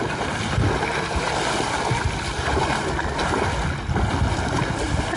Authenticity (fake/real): real